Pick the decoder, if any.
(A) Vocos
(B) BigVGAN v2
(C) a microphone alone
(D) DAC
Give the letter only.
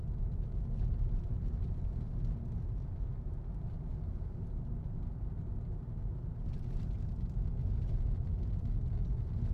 C